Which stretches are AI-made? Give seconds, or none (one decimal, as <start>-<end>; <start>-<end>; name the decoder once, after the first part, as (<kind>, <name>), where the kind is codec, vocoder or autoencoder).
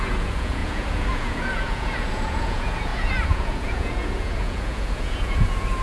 0.0-5.8 (vocoder, Vocos)